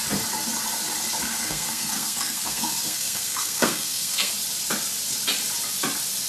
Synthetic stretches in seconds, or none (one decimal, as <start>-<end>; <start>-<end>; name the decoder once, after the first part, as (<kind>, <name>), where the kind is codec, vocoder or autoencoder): 1.3-4.3 (codec, SNAC)